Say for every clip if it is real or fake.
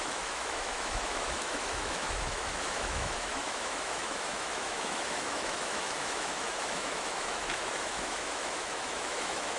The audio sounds fake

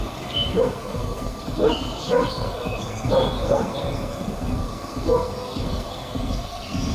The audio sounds fake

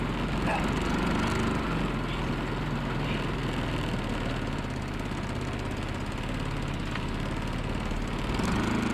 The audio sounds real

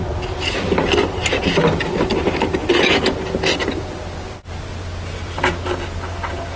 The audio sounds real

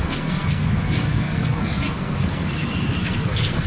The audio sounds fake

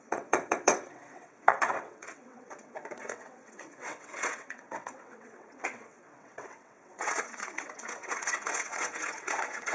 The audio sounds fake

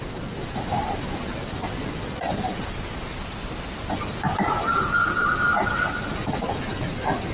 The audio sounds real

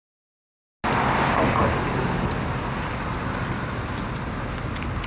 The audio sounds real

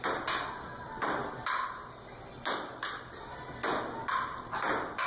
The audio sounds real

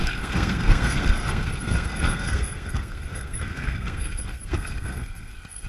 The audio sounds fake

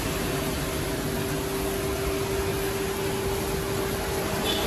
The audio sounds real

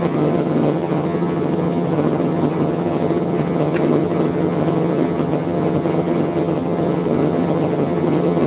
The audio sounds fake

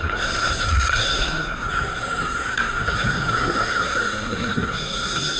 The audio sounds fake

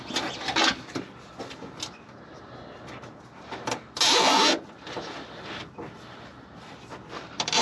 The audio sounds real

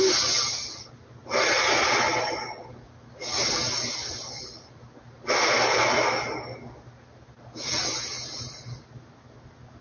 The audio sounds real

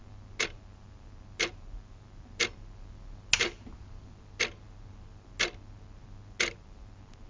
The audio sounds real